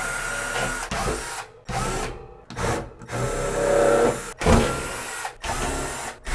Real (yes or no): yes